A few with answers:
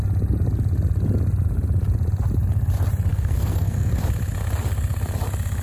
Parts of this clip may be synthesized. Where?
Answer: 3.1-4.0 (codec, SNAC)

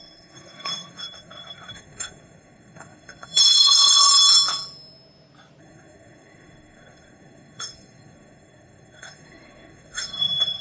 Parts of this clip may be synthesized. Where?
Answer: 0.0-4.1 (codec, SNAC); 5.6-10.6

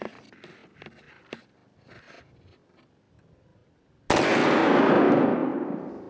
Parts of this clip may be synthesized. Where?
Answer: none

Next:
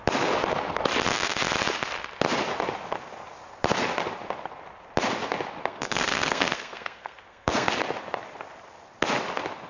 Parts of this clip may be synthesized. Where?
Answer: 5.6-7.7 (codec, SNAC)

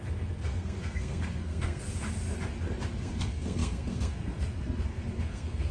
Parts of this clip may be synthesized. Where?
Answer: 0.0-1.9 (codec, SNAC); 3.0-5.7